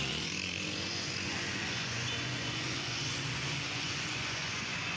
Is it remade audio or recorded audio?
remade